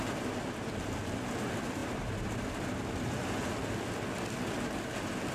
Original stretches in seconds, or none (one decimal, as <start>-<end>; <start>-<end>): 0.0-5.3